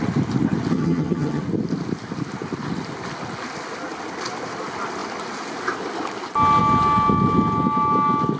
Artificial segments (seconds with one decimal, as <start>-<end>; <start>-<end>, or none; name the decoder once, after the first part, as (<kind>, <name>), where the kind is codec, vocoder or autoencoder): 0.7-1.4 (vocoder, HiFi-GAN)

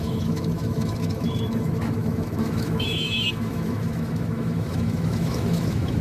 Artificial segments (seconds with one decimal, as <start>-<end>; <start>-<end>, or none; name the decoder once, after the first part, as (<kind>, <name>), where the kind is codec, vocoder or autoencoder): 0.0-6.0 (autoencoder, DAC-VAE)

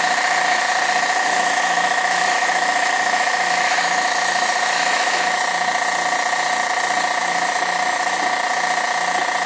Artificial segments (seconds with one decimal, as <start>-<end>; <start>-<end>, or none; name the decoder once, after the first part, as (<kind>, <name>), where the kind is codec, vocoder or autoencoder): 1.2-5.4 (autoencoder, DAC-VAE); 7.2-8.2

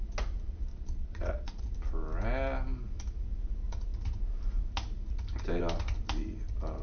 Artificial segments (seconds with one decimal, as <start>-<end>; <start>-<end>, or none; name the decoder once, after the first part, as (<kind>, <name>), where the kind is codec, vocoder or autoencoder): 0.7-1.6 (vocoder, Vocos)

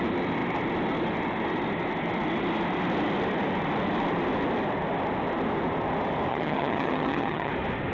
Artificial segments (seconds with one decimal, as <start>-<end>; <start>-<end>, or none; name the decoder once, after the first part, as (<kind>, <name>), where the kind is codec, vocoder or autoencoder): 6.3-7.5 (vocoder, HiFi-GAN)